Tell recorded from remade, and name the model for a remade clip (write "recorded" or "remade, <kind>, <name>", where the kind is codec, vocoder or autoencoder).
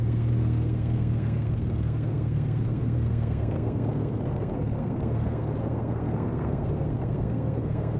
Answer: remade, codec, SNAC